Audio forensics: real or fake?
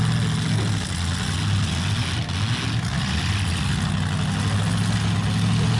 real